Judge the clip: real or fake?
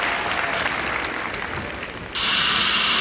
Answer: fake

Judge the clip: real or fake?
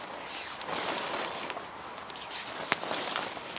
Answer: fake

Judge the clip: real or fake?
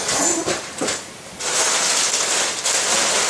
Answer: fake